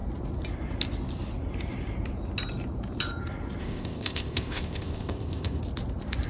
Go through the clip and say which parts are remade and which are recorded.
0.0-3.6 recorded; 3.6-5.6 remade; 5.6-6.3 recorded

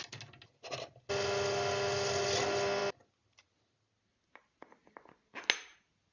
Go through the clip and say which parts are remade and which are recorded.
0.0-6.1 recorded

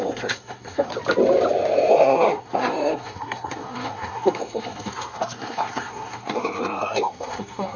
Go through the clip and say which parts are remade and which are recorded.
0.0-0.9 remade; 0.9-1.9 recorded; 1.9-7.8 remade

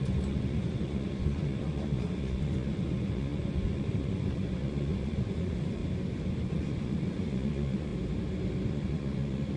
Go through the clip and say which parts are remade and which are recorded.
0.0-5.8 remade; 5.8-6.5 recorded; 6.5-7.9 remade; 7.9-8.7 recorded; 8.7-9.6 remade

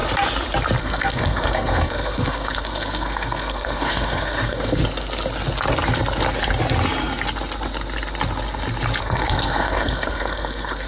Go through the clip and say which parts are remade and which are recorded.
0.0-0.8 recorded; 0.8-4.8 remade; 4.8-9.0 recorded; 9.0-10.9 remade

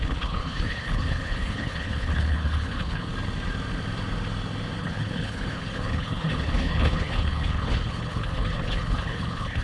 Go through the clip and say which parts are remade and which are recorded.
0.0-3.1 remade; 3.1-4.8 recorded; 4.8-9.6 remade

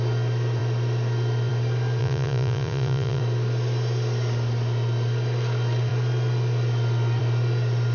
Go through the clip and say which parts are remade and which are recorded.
0.0-2.0 recorded; 2.0-3.2 remade; 3.2-7.9 recorded

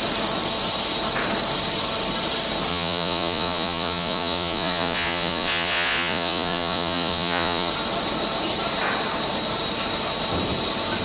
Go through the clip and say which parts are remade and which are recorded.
0.0-2.7 recorded; 2.7-7.7 remade; 7.7-11.0 recorded